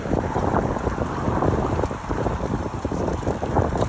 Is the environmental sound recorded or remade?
remade